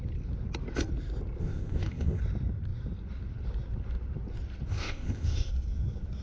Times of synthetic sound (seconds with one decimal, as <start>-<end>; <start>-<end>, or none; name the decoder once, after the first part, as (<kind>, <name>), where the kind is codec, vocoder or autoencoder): 1.4-2.2 (codec, ZipCodec); 4.7-5.5